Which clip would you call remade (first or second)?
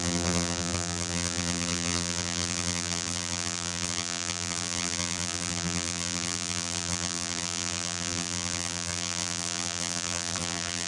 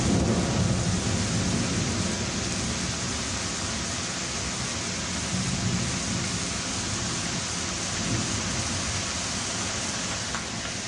first